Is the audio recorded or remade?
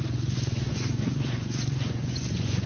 remade